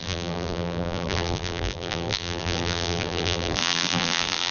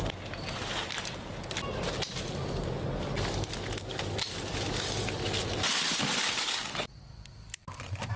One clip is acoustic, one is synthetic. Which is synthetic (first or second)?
first